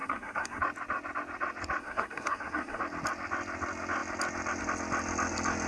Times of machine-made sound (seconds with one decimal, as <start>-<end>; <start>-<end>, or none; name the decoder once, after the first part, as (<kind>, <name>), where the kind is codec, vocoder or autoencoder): 0.0-0.6 (codec, SNAC); 1.8-2.8